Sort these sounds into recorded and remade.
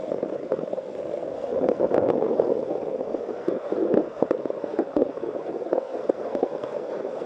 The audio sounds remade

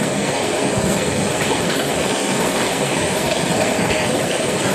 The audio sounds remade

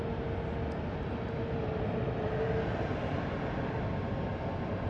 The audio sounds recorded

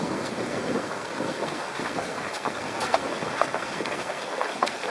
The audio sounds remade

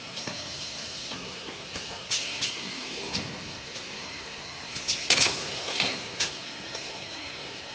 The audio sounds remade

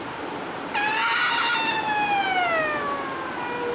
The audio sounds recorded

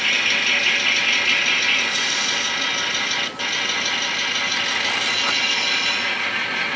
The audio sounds recorded